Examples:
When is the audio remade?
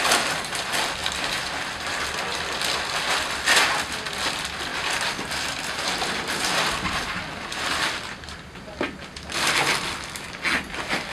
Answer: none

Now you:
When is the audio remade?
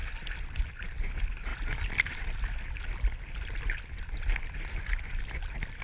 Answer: none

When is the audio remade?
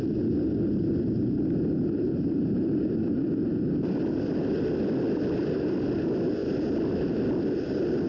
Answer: none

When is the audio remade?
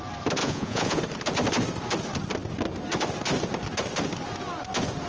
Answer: 0.4-1.0 (vocoder, Vocos)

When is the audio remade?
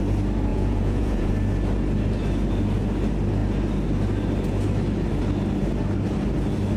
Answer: 0.5-1.3 (vocoder, Vocos)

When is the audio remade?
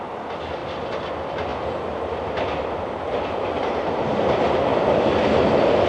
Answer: none